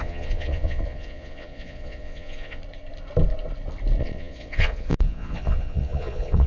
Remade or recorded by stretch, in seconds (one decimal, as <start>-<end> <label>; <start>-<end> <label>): 0.0-2.6 remade; 2.6-4.0 recorded; 4.0-6.5 remade